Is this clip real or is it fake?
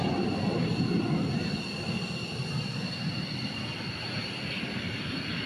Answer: real